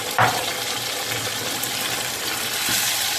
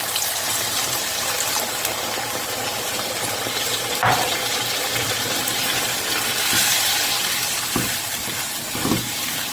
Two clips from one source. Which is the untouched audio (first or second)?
first